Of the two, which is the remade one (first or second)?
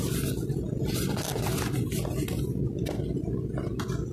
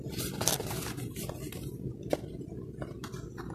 second